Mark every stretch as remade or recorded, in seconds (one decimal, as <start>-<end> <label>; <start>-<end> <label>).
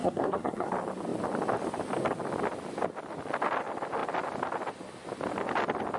0.0-0.7 remade; 0.7-6.0 recorded